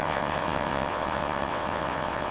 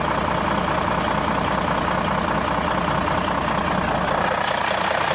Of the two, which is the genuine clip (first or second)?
second